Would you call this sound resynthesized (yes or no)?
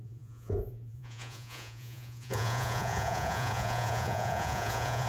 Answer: yes